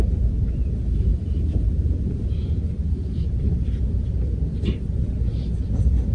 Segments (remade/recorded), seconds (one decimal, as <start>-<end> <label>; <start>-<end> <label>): 0.0-6.1 recorded